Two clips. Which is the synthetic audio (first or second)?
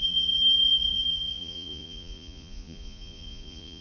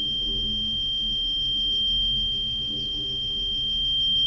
first